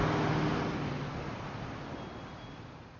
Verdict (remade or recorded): recorded